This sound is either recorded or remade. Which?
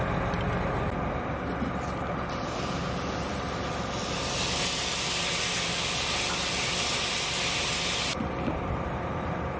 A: recorded